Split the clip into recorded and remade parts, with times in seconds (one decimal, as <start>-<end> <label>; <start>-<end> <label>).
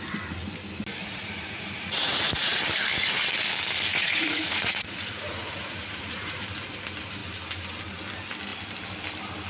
0.0-1.0 recorded; 1.0-2.6 remade; 2.6-3.9 recorded; 3.9-6.4 remade; 6.4-9.5 recorded